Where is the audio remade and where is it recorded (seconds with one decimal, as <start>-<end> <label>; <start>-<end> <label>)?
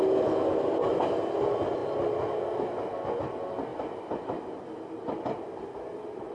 0.0-6.3 recorded